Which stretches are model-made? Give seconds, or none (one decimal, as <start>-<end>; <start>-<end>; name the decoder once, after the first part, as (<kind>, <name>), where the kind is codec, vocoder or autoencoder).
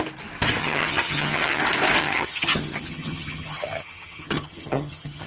0.6-1.6 (vocoder, HiFi-GAN); 2.0-5.3